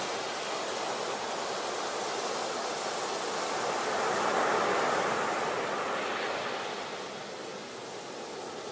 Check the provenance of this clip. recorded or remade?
recorded